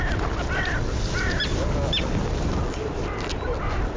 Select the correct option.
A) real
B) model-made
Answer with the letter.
A